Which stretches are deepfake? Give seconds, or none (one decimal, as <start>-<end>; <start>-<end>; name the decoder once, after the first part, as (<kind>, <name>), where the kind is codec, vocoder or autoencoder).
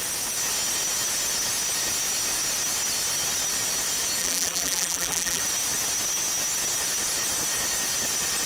4.2-5.4 (vocoder, BigVGAN v2)